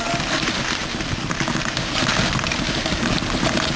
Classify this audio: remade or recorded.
recorded